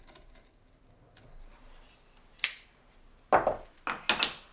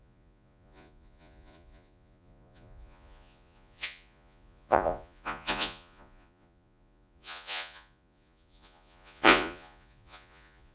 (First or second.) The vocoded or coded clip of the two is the second